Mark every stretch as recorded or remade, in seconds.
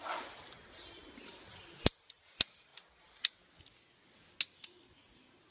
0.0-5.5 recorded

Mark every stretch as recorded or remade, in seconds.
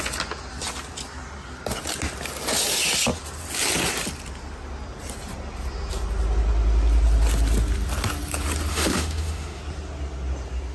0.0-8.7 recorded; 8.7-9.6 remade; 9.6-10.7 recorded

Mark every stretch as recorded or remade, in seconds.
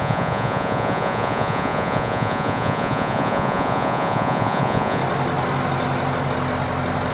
0.0-5.0 remade; 5.0-7.1 recorded